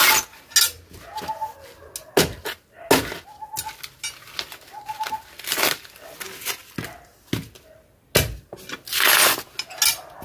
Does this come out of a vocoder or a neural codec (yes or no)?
no